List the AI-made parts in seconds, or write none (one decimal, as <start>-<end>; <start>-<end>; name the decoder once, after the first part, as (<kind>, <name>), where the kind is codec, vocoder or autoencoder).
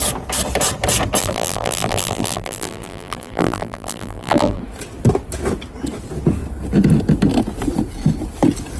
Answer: 1.2-4.6 (vocoder, BigVGAN v2)